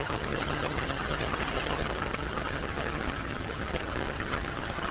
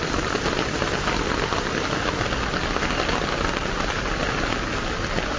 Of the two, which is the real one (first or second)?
second